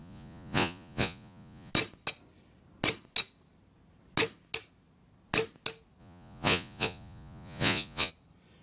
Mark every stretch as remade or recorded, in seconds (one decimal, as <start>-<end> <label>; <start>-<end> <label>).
0.0-1.7 remade; 1.7-6.0 recorded; 6.0-8.1 remade; 8.1-8.6 recorded